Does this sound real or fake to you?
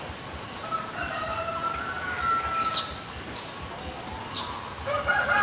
real